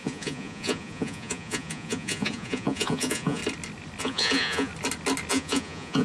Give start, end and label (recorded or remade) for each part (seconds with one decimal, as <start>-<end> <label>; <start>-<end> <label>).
0.0-3.4 remade; 3.4-4.0 recorded; 4.0-4.7 remade; 4.7-5.3 recorded; 5.3-6.0 remade